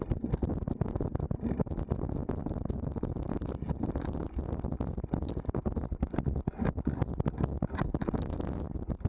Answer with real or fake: real